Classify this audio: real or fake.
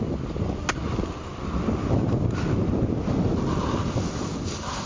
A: real